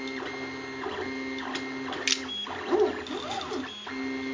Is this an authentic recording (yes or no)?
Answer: yes